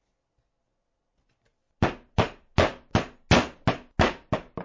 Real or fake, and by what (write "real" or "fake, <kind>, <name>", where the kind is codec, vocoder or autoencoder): real